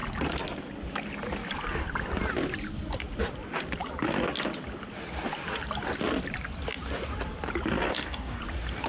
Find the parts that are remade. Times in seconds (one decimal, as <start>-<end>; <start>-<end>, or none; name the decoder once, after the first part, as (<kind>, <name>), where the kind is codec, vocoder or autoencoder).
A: 7.9-8.4 (codec, DAC)